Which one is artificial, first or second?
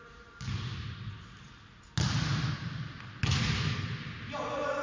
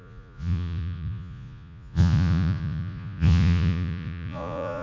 second